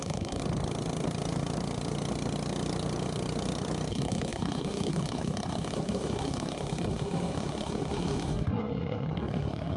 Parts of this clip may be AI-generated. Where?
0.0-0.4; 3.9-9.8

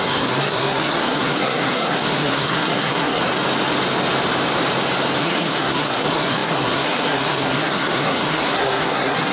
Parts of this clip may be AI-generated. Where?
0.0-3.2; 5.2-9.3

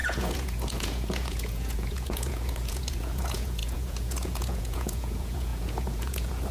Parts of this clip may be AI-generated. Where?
0.0-6.5

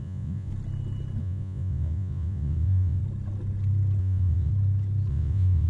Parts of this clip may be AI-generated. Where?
0.0-0.5; 1.2-3.0; 4.0-4.5; 5.1-5.7